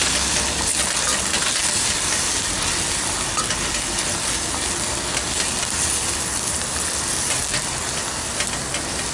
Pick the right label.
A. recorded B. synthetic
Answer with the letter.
A